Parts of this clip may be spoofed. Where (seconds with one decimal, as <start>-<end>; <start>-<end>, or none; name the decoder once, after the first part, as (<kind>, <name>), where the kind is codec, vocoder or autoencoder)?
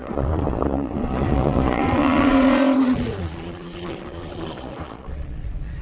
0.0-5.8 (vocoder, Vocos)